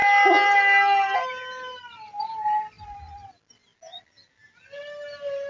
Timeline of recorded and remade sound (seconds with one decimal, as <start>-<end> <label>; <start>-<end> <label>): 0.0-5.5 recorded